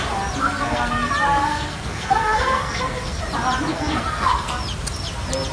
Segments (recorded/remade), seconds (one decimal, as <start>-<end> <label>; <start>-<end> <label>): 0.0-0.4 recorded; 0.4-1.1 remade; 1.1-1.5 recorded; 1.5-3.2 remade; 3.2-3.7 recorded; 3.7-4.5 remade; 4.5-5.5 recorded